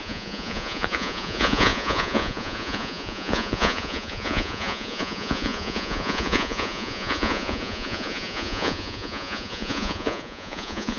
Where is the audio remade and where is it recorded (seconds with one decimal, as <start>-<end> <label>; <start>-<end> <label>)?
0.0-11.0 remade